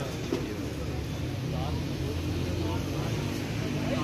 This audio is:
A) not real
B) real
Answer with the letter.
B